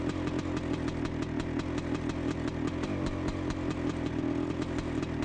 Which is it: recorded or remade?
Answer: recorded